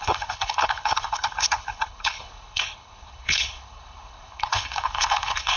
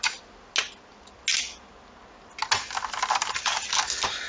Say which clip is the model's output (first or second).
first